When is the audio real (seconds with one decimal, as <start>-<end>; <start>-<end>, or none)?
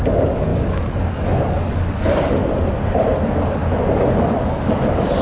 2.4-3.2; 3.6-4.2